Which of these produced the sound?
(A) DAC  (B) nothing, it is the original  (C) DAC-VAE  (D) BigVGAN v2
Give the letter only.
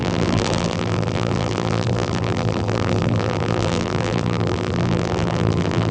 D